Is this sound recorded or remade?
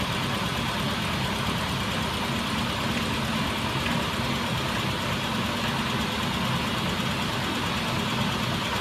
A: recorded